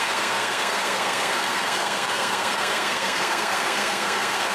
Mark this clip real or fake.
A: fake